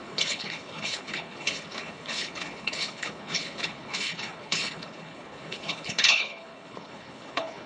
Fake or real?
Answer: fake